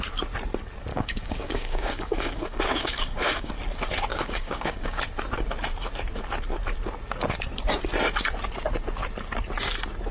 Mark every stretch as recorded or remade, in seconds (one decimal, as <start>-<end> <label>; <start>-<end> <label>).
0.0-0.9 recorded; 0.9-3.5 remade; 3.5-4.1 recorded; 4.1-5.0 remade; 5.0-10.1 recorded